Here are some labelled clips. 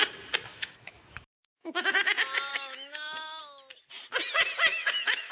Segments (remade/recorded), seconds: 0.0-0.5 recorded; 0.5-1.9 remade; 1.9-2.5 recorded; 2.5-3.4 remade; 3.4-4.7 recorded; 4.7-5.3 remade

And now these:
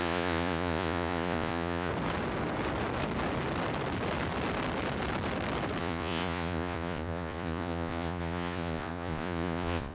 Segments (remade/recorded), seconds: 0.0-1.9 remade; 1.9-5.8 recorded; 5.8-9.9 remade

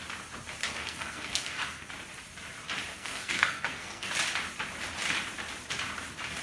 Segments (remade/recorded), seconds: 0.0-0.6 recorded; 0.6-1.9 remade; 1.9-2.9 recorded; 2.9-4.1 remade; 4.1-6.4 recorded

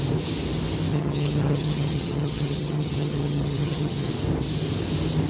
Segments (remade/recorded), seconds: 0.0-0.9 recorded; 0.9-4.1 remade; 4.1-5.3 recorded

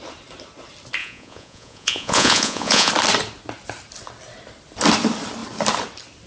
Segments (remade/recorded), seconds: 0.0-1.0 recorded; 1.0-2.9 remade; 2.9-6.3 recorded

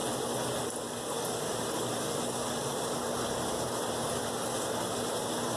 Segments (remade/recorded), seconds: 0.0-5.6 recorded

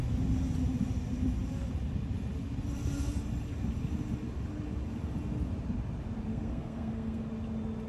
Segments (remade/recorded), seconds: 0.0-6.3 recorded; 6.3-7.2 remade; 7.2-7.9 recorded

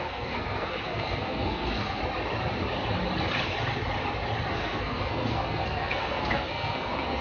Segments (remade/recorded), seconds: 0.0-2.0 remade; 2.0-4.5 recorded; 4.5-7.2 remade